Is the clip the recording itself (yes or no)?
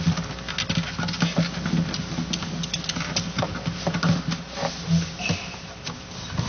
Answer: yes